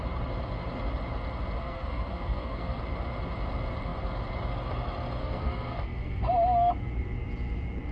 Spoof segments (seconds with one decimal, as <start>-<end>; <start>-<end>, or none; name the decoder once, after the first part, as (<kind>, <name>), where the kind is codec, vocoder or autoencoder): 1.6-2.8 (codec, SNAC); 5.2-6.2